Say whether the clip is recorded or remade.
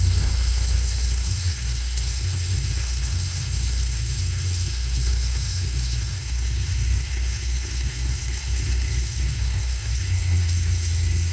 remade